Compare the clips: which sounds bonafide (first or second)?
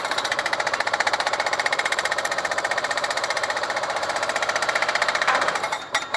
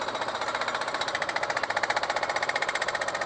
second